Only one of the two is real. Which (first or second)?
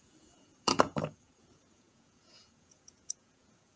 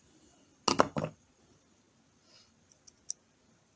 second